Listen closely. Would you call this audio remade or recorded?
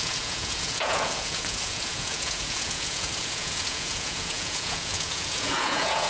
remade